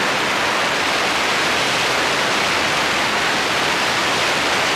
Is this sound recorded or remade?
recorded